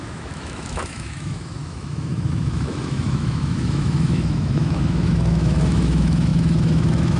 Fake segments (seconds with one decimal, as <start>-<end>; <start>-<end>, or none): 0.0-7.2